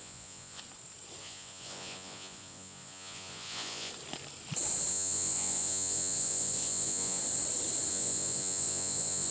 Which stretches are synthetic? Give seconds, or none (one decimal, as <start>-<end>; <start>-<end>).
0.0-0.6; 1.2-3.9; 4.9-7.2; 7.9-9.3